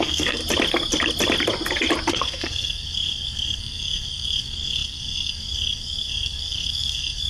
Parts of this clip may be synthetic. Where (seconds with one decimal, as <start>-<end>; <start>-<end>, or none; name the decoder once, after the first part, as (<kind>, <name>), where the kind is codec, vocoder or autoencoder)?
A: 0.0-0.4 (codec, SNAC); 2.1-7.3